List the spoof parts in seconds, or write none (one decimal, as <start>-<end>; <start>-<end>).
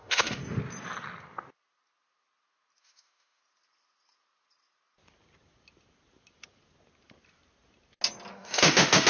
0.0-0.4; 2.8-3.4; 8.3-9.1